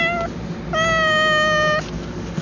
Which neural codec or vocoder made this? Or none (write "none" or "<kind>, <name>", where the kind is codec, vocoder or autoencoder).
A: none